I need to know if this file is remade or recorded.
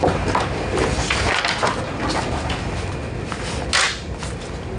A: recorded